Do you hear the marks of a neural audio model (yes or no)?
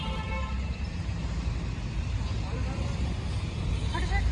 yes